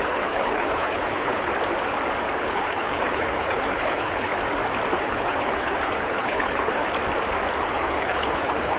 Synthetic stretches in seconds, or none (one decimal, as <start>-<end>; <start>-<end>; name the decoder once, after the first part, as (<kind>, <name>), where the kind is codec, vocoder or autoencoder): 0.0-1.5 (codec, HILCodec); 2.4-4.3; 5.0-6.8; 7.6-8.8